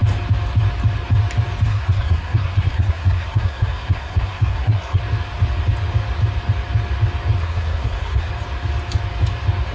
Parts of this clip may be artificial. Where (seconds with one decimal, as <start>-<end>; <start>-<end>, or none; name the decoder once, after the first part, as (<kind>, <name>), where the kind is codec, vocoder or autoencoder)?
1.7-5.0 (codec, SNAC); 7.4-8.3